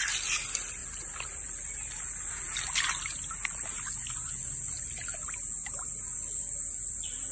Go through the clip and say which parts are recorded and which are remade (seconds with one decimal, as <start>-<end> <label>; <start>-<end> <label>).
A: 0.0-7.3 recorded